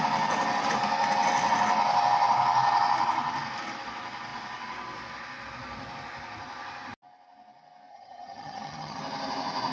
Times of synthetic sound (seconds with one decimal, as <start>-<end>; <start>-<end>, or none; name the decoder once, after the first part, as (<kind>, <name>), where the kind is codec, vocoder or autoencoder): 7.9-9.0 (vocoder, HiFi-GAN)